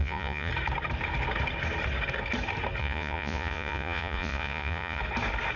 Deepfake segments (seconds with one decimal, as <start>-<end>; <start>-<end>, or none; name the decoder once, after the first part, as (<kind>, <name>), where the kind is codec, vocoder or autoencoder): 0.0-0.5 (vocoder, Vocos); 2.8-5.0